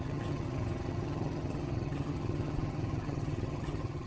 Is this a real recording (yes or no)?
no